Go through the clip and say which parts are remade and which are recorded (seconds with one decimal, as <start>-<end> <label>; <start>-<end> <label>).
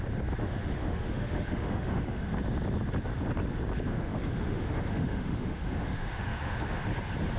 0.0-0.4 recorded; 0.4-2.3 remade; 2.3-3.9 recorded; 3.9-6.8 remade; 6.8-7.4 recorded